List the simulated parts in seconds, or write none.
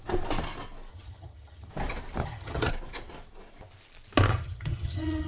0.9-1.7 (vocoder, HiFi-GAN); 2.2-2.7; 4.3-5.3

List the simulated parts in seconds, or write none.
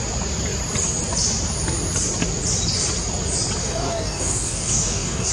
3.6-5.3 (codec, DAC)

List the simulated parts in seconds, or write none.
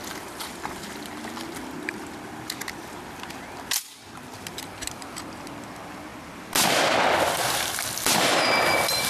none